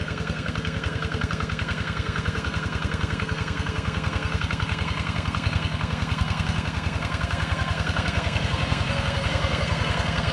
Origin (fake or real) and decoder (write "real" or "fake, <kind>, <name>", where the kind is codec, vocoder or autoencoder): fake, codec, SNAC